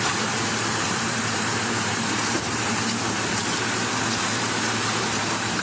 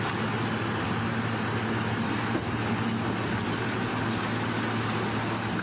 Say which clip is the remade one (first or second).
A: first